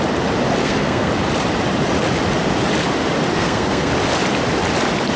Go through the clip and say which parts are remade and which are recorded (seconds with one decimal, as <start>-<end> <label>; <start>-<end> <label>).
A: 0.0-0.6 recorded; 0.6-1.1 remade; 1.1-3.3 recorded; 3.3-3.9 remade; 3.9-5.2 recorded